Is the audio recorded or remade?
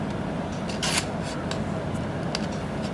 recorded